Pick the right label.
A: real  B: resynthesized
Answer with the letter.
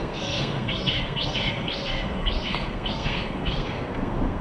B